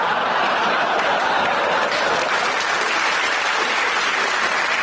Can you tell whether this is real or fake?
real